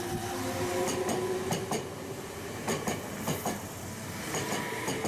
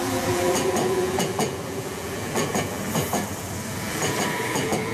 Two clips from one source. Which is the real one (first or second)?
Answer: first